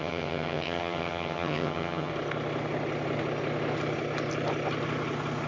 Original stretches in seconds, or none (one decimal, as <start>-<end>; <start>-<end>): 2.1-5.5